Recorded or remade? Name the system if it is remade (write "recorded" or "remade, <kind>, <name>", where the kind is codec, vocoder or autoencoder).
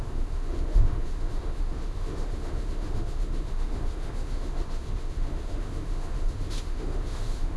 remade, autoencoder, DAC-VAE